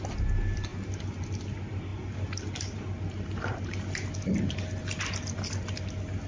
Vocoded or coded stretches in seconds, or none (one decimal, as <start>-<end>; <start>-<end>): none